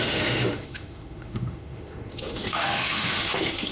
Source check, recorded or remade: remade